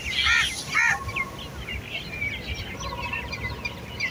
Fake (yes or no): no